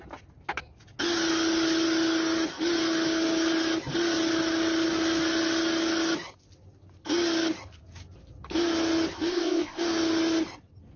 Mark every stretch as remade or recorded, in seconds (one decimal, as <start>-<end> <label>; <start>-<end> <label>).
0.0-9.3 recorded; 9.3-9.8 remade; 9.8-11.0 recorded